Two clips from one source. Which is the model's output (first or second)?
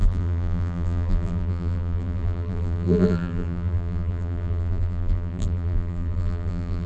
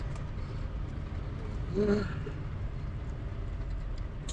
first